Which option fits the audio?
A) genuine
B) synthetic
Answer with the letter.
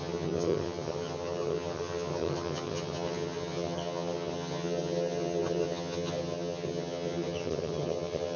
B